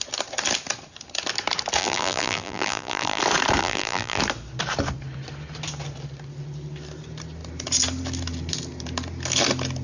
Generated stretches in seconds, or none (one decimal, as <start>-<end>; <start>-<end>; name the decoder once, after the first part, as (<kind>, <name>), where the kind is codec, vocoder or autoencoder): 1.8-3.2 (vocoder, BigVGAN v2); 3.6-4.2